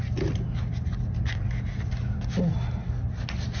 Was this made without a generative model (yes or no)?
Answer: yes